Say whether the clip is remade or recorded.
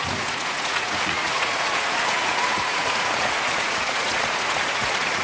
remade